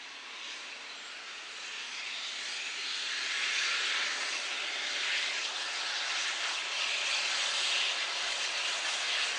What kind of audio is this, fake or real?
real